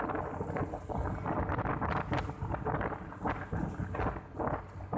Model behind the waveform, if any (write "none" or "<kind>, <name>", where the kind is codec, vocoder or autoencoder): none